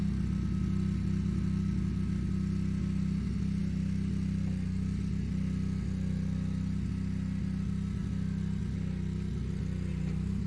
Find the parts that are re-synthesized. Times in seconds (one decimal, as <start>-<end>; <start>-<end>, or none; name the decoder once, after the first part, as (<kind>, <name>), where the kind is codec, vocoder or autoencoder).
none